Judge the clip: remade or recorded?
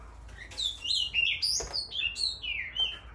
recorded